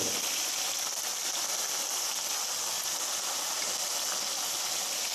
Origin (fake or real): real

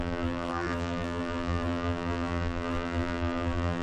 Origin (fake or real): fake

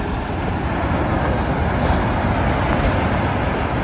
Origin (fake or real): real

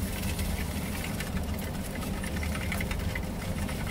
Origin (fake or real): fake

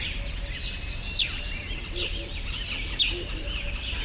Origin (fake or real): real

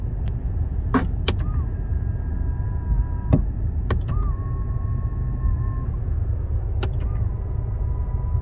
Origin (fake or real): real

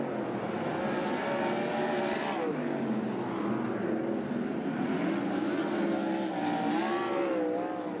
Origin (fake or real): real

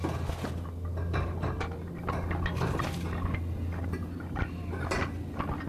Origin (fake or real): real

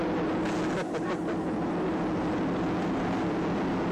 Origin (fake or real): real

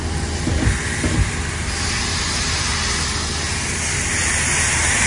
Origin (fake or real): real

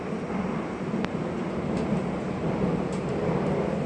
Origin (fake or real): real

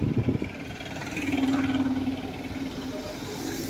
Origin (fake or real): fake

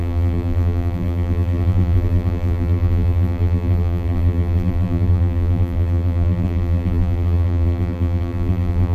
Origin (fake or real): fake